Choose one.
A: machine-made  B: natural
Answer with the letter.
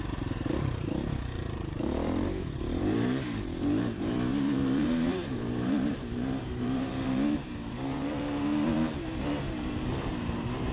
A